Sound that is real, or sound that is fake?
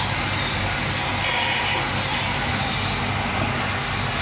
real